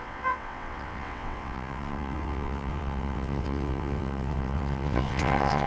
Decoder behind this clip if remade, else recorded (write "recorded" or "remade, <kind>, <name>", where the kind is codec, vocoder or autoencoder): remade, vocoder, WaveNeXt